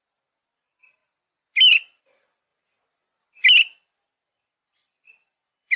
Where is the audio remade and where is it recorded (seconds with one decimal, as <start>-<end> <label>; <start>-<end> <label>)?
0.0-1.0 remade; 1.0-2.0 recorded; 2.0-2.5 remade; 2.5-3.5 recorded; 3.5-5.8 remade